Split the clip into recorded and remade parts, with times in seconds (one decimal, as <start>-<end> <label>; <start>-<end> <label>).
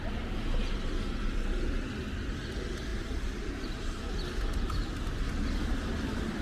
0.0-6.4 recorded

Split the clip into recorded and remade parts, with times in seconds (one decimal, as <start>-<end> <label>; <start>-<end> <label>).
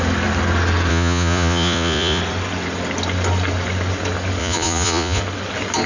0.0-0.9 recorded; 0.9-2.2 remade; 2.2-4.4 recorded; 4.4-5.2 remade; 5.2-5.9 recorded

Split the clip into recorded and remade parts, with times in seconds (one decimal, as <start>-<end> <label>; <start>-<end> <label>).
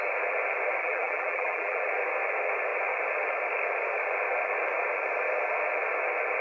0.0-0.8 recorded; 0.8-1.8 remade; 1.8-6.4 recorded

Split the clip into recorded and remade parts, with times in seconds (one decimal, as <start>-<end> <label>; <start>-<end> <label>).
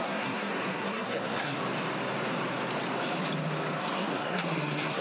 0.0-1.6 remade; 1.6-3.8 recorded; 3.8-5.0 remade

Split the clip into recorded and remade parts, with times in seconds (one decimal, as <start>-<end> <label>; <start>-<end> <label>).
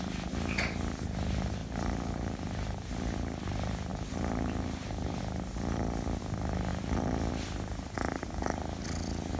0.0-1.6 recorded; 1.6-2.9 remade; 2.9-3.9 recorded; 3.9-5.2 remade; 5.2-6.7 recorded; 6.7-7.3 remade; 7.3-9.4 recorded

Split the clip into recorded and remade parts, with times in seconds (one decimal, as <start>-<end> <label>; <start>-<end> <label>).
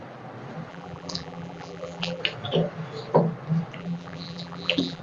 0.0-0.7 recorded; 0.7-2.2 remade; 2.2-3.8 recorded; 3.8-5.0 remade